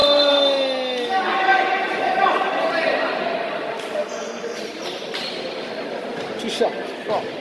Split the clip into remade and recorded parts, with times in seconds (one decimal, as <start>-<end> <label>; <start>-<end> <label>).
0.0-4.0 recorded; 4.0-4.6 remade; 4.6-7.4 recorded

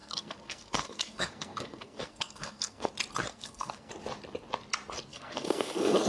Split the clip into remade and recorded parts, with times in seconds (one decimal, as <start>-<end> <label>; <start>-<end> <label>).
0.0-2.9 remade; 2.9-3.3 recorded; 3.3-3.9 remade; 3.9-5.1 recorded; 5.1-6.1 remade

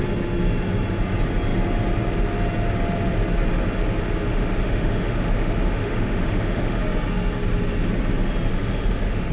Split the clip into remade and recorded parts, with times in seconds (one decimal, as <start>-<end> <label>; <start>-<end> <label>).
0.0-4.3 recorded; 4.3-6.8 remade; 6.8-8.5 recorded; 8.5-9.3 remade

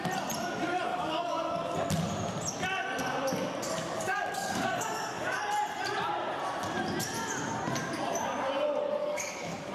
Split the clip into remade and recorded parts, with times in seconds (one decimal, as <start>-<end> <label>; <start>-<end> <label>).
0.0-0.9 recorded; 0.9-1.5 remade; 1.5-3.8 recorded; 3.8-5.4 remade; 5.4-9.0 recorded; 9.0-9.7 remade

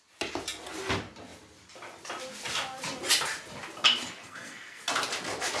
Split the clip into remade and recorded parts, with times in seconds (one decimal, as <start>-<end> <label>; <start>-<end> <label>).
0.0-4.2 recorded; 4.2-4.8 remade; 4.8-5.6 recorded

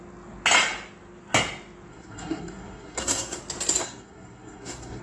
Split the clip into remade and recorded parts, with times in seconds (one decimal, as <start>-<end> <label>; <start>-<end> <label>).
0.0-1.9 recorded; 1.9-3.4 remade; 3.4-3.8 recorded; 3.8-5.0 remade

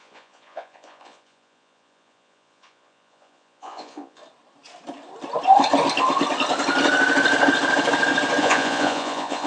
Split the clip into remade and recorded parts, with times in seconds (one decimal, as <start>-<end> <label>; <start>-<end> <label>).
0.0-4.2 remade; 4.2-8.4 recorded; 8.4-9.5 remade

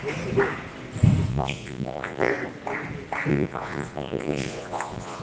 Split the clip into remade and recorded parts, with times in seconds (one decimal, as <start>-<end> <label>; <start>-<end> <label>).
0.0-1.3 recorded; 1.3-2.3 remade; 2.3-3.3 recorded; 3.3-5.2 remade